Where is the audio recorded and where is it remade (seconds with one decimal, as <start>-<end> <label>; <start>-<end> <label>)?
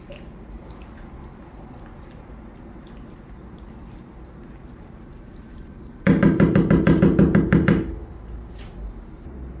0.0-5.3 recorded; 5.3-6.3 remade; 6.3-9.6 recorded